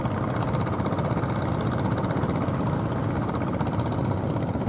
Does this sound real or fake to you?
real